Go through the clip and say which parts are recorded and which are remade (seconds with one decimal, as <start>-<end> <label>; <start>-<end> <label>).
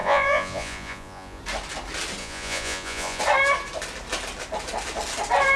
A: 0.0-1.4 remade; 1.4-2.2 recorded; 2.2-3.2 remade; 3.2-5.6 recorded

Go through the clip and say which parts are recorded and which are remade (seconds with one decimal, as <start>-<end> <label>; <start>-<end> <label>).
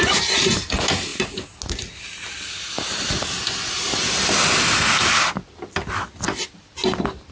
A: 0.0-7.3 recorded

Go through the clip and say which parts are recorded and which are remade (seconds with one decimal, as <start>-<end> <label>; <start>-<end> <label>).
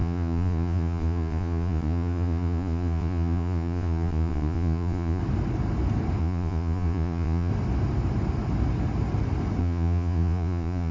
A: 0.0-5.2 remade; 5.2-6.2 recorded; 6.2-7.5 remade; 7.5-9.6 recorded; 9.6-10.9 remade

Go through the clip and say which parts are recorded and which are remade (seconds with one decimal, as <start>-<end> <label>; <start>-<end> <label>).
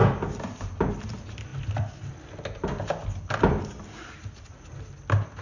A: 0.0-5.4 recorded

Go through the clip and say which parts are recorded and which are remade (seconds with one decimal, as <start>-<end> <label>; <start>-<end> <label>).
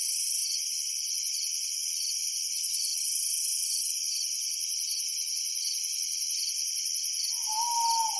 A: 0.0-8.2 recorded